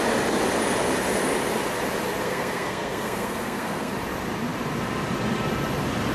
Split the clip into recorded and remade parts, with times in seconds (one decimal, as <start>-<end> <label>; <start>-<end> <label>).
0.0-2.2 recorded; 2.2-3.9 remade; 3.9-6.1 recorded